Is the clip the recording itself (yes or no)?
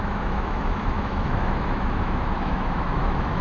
no